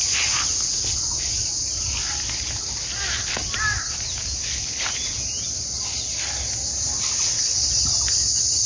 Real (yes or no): yes